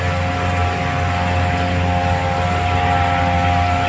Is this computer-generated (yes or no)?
no